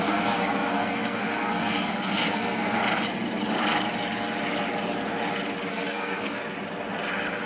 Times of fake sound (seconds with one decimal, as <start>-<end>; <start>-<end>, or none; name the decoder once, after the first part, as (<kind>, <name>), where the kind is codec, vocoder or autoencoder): 0.0-2.8 (codec, SNAC); 5.7-6.4